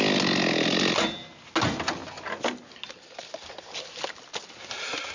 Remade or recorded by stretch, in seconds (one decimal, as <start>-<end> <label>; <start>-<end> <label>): 0.0-5.1 recorded